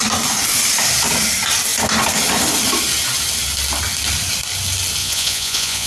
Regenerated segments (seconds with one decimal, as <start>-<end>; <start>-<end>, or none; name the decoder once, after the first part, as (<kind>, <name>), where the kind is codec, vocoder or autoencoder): 5.0-5.9 (vocoder, Vocos)